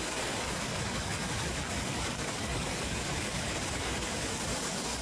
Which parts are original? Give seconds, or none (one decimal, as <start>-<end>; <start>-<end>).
none